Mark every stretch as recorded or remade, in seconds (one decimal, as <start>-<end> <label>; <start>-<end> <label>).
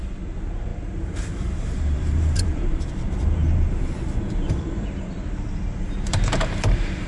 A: 0.0-7.1 remade